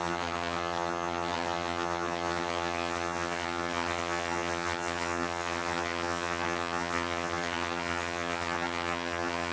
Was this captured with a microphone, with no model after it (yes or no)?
no